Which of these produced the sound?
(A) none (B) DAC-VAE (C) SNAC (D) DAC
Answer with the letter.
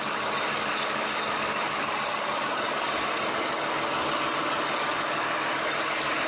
D